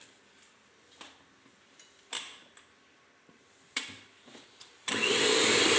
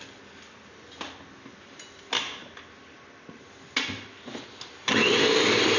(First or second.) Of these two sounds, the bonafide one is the second